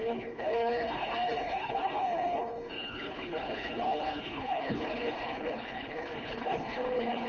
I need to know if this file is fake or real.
fake